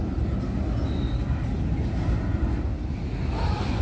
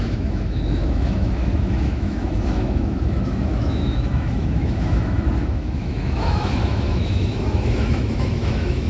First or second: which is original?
first